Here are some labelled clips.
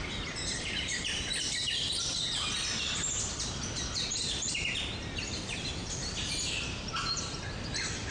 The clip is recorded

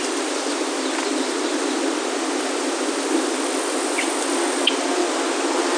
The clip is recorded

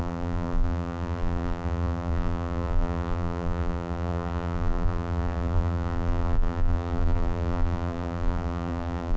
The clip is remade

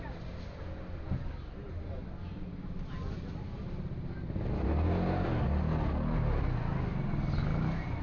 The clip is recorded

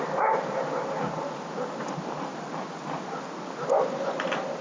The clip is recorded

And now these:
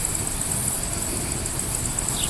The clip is recorded